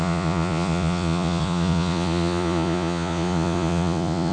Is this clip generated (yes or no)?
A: yes